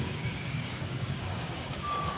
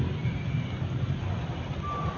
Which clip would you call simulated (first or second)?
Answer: first